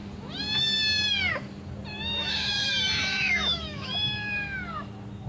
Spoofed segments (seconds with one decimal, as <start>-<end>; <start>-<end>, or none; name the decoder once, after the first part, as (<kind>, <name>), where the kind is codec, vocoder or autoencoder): 2.2-3.9 (autoencoder, DAC-VAE)